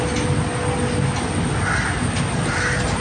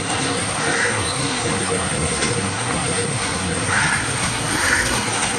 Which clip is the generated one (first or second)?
second